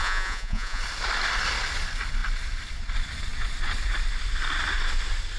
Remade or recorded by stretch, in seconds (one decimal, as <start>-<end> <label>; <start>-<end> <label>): 0.0-0.8 remade; 0.8-5.4 recorded

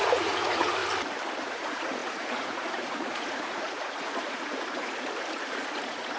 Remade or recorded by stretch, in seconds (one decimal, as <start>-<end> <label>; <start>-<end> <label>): 0.0-0.8 remade; 0.8-1.4 recorded; 1.4-6.2 remade

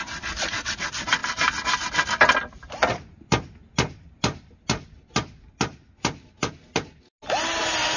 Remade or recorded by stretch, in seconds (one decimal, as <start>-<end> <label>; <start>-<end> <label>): 0.0-8.0 recorded

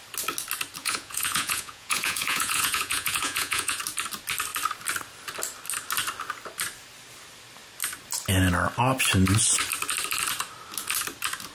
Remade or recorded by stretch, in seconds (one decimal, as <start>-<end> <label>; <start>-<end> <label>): 0.0-0.8 recorded; 0.8-3.8 remade; 3.8-11.5 recorded

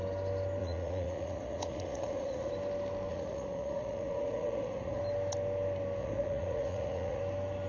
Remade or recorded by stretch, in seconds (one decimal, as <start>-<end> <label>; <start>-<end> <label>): 0.0-0.6 recorded; 0.6-2.5 remade; 2.5-3.1 recorded; 3.1-5.0 remade; 5.0-6.0 recorded; 6.0-7.2 remade; 7.2-7.7 recorded

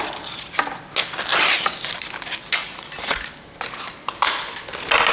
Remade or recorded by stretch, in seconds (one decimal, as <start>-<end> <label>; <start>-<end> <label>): 0.0-2.6 recorded; 2.6-3.3 remade; 3.3-5.1 recorded

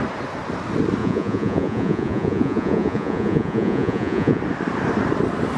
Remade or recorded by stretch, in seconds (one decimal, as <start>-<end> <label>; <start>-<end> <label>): 0.0-1.0 recorded; 1.0-4.4 remade; 4.4-5.6 recorded

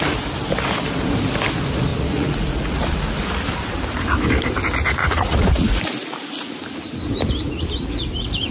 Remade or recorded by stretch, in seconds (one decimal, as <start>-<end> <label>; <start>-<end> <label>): 0.0-1.9 recorded; 1.9-3.2 remade; 3.2-5.0 recorded; 5.0-5.8 remade; 5.8-8.5 recorded